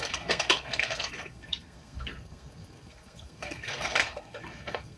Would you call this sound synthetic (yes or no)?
yes